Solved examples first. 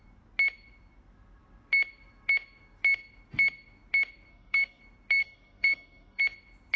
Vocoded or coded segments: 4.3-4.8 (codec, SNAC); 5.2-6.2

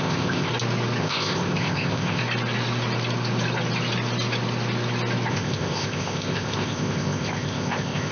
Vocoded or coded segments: 0.0-0.5 (codec, ZipCodec); 1.0-2.2; 5.3-8.1

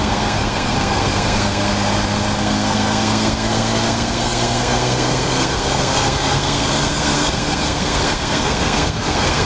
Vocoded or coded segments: 0.0-1.7 (codec, SNAC); 2.4-9.4

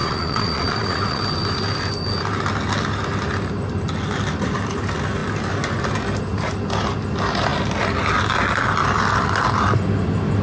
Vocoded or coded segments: 0.0-1.2 (vocoder, Vocos)

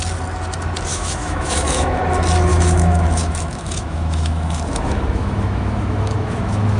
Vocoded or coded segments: 0.9-2.0 (autoencoder, DAC-VAE); 2.5-6.8

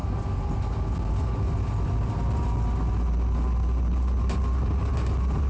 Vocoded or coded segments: none